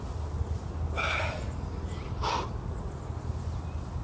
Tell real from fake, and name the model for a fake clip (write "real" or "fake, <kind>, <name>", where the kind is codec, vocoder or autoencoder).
real